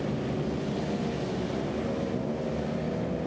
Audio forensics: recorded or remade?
recorded